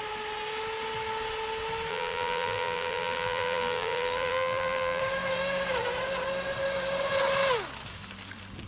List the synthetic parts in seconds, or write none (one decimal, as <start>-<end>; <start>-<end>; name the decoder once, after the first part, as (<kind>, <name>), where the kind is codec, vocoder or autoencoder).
1.9-5.0 (vocoder, BigVGAN v2)